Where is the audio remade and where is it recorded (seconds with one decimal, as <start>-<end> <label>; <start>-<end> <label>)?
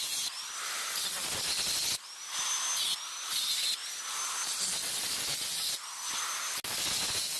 0.0-7.4 recorded